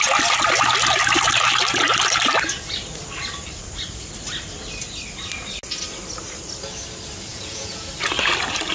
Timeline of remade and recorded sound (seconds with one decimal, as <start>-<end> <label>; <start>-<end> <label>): 0.0-7.3 recorded; 7.3-7.9 remade; 7.9-8.7 recorded